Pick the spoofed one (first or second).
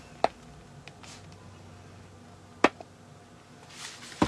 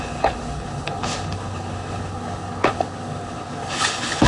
second